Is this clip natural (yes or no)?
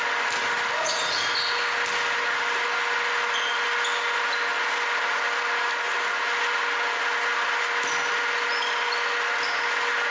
yes